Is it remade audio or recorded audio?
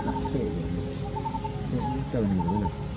recorded